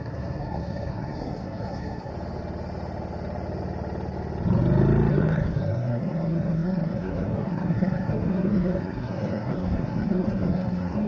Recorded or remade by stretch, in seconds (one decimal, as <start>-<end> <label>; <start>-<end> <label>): 0.0-2.1 remade; 2.1-5.1 recorded; 5.1-11.1 remade

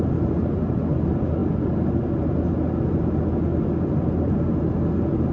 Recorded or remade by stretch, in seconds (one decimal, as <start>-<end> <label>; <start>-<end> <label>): 0.0-5.3 recorded

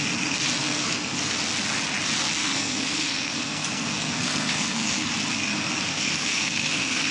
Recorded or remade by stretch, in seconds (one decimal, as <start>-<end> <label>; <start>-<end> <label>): 0.0-0.6 recorded; 0.6-1.3 remade; 1.3-2.4 recorded; 2.4-5.1 remade; 5.1-5.9 recorded; 5.9-7.1 remade

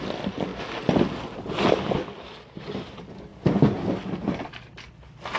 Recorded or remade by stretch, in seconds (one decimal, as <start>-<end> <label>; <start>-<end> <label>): 0.0-5.4 recorded

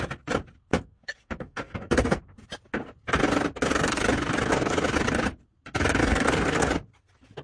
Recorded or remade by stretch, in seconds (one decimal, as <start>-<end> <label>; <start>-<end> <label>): 0.0-0.7 recorded; 0.7-2.2 remade; 2.2-6.0 recorded; 6.0-6.7 remade; 6.7-7.4 recorded

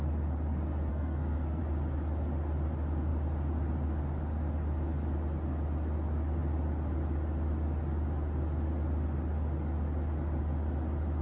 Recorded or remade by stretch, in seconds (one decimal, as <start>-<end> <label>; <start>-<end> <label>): 0.0-0.9 recorded; 0.9-1.6 remade; 1.6-11.2 recorded

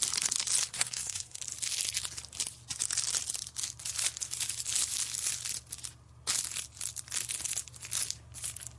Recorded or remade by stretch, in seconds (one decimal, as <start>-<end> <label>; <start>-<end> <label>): 0.0-0.7 recorded; 0.7-1.4 remade; 1.4-8.8 recorded

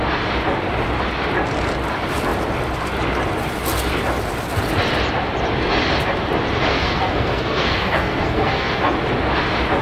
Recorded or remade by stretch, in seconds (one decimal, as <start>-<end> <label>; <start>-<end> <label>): 0.0-6.7 recorded; 6.7-8.9 remade; 8.9-9.8 recorded